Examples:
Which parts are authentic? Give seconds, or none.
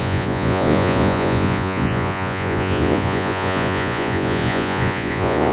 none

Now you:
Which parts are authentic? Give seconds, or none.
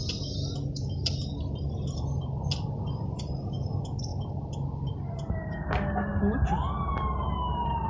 0.0-7.9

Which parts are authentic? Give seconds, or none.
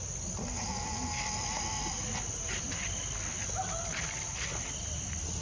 0.0-5.4